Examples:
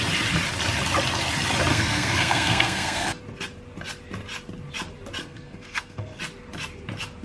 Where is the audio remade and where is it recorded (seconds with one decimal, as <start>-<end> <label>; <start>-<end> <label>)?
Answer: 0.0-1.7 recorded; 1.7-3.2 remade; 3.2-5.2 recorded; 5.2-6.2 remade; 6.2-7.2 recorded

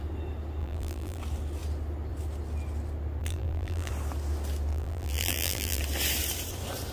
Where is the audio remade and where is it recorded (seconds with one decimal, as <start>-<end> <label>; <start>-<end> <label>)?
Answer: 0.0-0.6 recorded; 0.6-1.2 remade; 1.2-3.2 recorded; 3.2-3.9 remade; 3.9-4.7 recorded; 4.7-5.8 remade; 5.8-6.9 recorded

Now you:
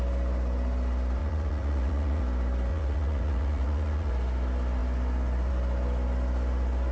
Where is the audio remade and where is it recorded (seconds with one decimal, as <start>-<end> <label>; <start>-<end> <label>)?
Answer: 0.0-1.2 recorded; 1.2-2.2 remade; 2.2-2.7 recorded; 2.7-4.1 remade; 4.1-6.9 recorded